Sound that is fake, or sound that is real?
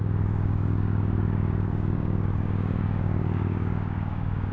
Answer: fake